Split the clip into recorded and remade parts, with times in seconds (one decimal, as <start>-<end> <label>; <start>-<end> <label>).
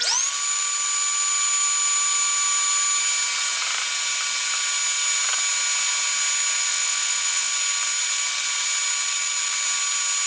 0.0-6.7 recorded; 6.7-7.5 remade; 7.5-10.3 recorded